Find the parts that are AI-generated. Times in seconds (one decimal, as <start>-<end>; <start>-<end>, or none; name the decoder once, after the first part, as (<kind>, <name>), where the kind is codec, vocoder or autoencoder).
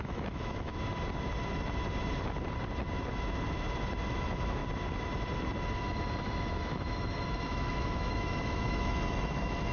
0.0-0.7 (autoencoder, DAC-VAE); 4.1-4.6; 5.8-9.7